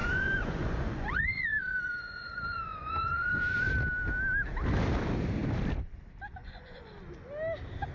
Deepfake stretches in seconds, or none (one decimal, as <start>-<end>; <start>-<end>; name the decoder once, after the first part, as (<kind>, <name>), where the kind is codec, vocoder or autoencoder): 0.0-3.7 (vocoder, Vocos); 6.4-6.9